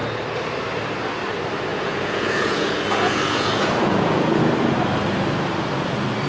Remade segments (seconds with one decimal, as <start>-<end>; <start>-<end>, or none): 1.7-4.4